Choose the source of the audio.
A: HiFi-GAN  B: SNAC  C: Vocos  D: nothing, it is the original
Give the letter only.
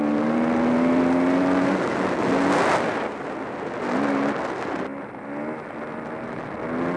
D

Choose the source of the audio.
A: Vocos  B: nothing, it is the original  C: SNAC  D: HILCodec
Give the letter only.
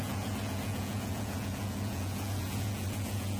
A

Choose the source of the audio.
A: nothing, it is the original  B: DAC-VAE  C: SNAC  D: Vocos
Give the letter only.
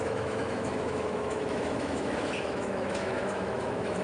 B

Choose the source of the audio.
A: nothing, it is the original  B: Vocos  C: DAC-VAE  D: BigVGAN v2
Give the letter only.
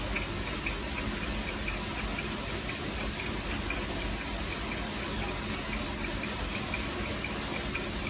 A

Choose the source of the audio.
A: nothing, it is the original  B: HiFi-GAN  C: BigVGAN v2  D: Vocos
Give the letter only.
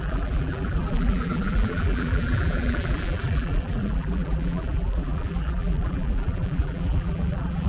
C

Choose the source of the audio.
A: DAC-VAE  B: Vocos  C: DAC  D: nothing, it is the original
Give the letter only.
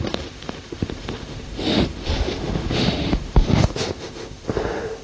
A